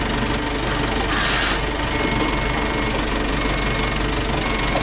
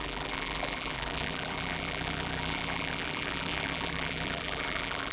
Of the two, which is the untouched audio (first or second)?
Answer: first